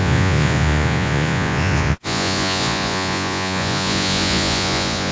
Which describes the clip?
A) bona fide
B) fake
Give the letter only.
B